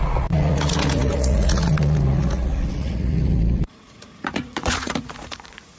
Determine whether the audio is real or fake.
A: fake